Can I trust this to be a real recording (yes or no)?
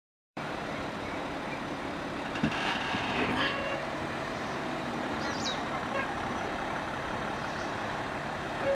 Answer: no